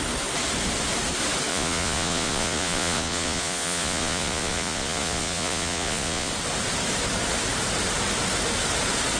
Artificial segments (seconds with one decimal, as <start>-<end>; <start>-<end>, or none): 1.5-6.3